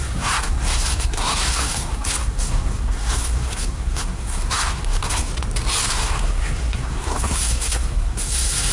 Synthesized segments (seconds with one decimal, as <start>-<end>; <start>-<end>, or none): 0.0-5.3; 5.9-8.7